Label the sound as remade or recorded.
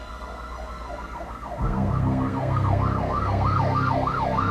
remade